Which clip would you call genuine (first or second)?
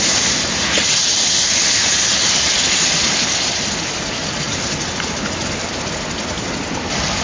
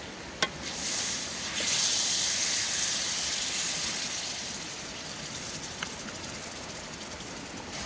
first